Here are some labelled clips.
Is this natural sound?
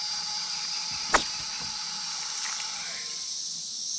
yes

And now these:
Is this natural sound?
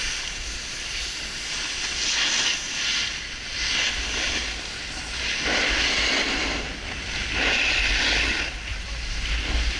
yes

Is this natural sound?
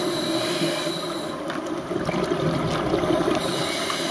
yes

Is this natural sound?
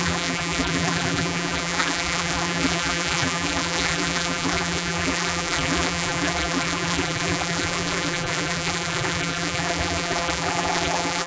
no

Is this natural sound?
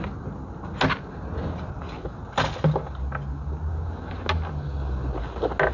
yes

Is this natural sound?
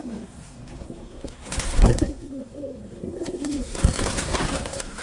no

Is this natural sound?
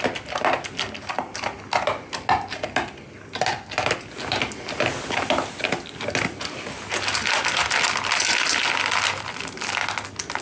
yes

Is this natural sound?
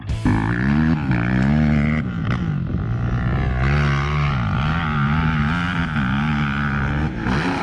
yes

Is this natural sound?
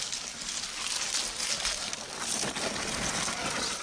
yes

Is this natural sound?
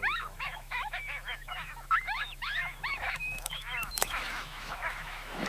no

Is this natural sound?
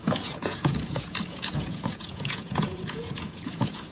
no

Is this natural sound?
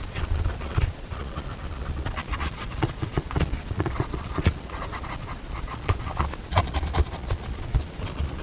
no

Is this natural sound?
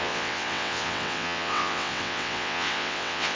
no